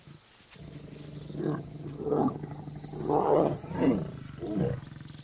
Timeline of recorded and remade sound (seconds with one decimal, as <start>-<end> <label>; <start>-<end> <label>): 0.0-0.6 recorded; 0.6-3.7 remade; 3.7-5.2 recorded